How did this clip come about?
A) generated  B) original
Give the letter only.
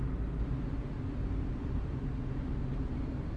B